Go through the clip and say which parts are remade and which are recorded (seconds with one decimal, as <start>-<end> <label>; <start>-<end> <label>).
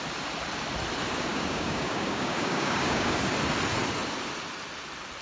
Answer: 0.0-1.3 recorded; 1.3-3.3 remade; 3.3-5.2 recorded